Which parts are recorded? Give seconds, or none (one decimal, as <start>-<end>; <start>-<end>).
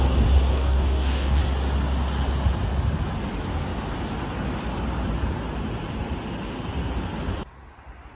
0.0-0.5; 1.4-8.1